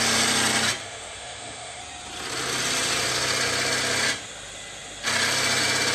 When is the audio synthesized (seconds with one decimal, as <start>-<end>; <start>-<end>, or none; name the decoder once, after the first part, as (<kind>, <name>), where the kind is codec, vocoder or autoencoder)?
0.8-1.8 (autoencoder, DAC-VAE)